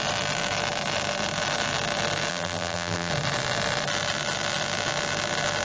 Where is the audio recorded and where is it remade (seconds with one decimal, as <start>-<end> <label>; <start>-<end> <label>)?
0.0-2.3 recorded; 2.3-3.1 remade; 3.1-5.6 recorded

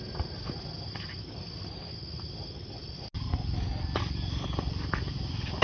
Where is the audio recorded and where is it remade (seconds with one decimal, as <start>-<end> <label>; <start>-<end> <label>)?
0.0-5.6 recorded

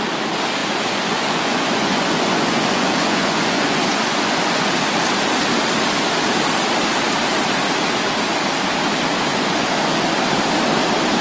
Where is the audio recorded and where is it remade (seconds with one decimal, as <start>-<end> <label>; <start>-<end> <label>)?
0.0-0.6 recorded; 0.6-4.7 remade; 4.7-9.3 recorded; 9.3-10.2 remade; 10.2-11.2 recorded

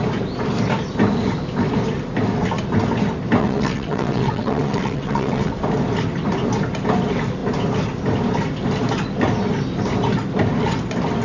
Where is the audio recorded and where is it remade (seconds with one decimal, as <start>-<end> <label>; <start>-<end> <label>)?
0.0-3.4 recorded; 3.4-5.5 remade; 5.5-11.2 recorded

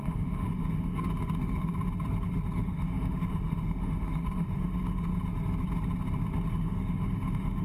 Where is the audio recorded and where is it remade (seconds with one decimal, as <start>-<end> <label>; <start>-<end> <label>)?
0.0-1.7 remade; 1.7-2.5 recorded; 2.5-5.1 remade; 5.1-6.5 recorded; 6.5-7.6 remade

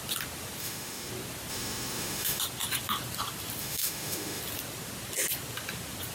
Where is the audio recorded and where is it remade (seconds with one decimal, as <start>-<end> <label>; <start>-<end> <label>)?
0.0-0.6 recorded; 0.6-1.1 remade; 1.1-1.5 recorded; 1.5-2.4 remade; 2.4-3.6 recorded; 3.6-4.4 remade; 4.4-6.1 recorded